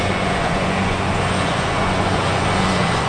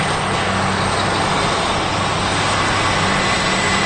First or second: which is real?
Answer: second